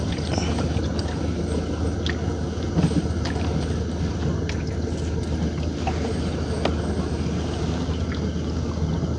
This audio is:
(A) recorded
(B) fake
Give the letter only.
A